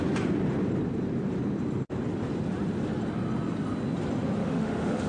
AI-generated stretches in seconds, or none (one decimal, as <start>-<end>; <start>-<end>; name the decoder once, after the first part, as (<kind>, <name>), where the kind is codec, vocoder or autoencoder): 4.4-5.1 (autoencoder, DAC-VAE)